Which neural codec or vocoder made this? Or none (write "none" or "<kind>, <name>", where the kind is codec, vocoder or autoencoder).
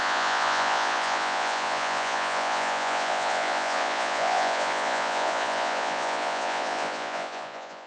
vocoder, Vocos